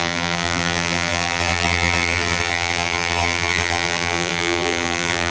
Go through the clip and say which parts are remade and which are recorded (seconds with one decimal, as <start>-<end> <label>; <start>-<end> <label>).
0.0-5.3 remade